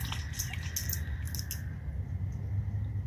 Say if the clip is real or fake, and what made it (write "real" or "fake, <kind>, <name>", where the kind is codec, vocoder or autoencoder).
real